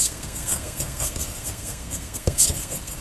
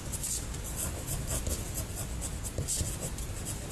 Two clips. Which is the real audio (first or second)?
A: second